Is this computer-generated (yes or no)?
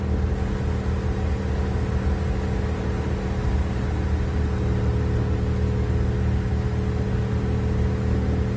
no